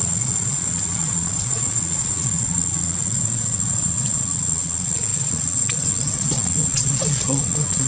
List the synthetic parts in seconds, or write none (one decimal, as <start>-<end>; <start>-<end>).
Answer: 0.0-7.9